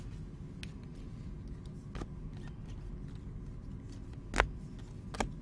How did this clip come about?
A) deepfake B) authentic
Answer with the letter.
B